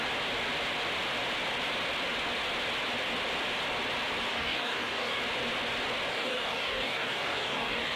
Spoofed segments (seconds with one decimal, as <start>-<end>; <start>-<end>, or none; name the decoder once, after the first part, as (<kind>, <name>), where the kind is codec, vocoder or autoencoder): 4.3-5.2 (codec, DAC); 6.1-8.0